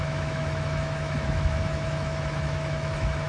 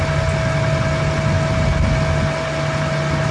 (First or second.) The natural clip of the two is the second